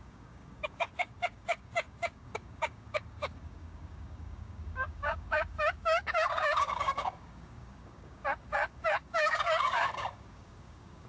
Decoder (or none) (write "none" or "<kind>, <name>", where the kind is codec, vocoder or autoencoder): codec, DAC